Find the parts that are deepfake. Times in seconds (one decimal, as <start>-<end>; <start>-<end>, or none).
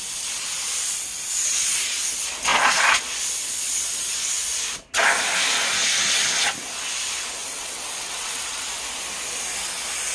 7.4-8.7